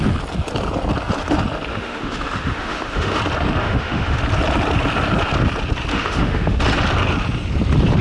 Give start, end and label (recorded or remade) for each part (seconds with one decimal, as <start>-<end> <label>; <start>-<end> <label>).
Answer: 0.0-1.7 recorded; 1.7-3.2 remade; 3.2-3.6 recorded; 3.6-4.2 remade; 4.2-5.9 recorded; 5.9-6.6 remade; 6.6-8.0 recorded